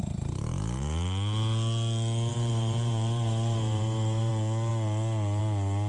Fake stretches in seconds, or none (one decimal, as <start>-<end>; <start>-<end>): 2.3-4.3